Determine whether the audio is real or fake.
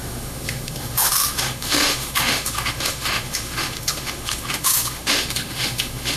fake